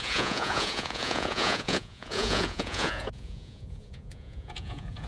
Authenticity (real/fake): fake